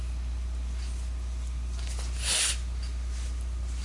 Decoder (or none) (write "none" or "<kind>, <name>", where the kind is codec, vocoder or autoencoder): none